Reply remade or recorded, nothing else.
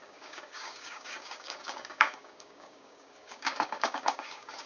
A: remade